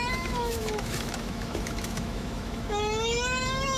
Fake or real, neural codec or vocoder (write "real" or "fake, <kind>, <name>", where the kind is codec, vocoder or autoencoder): fake, autoencoder, DAC-VAE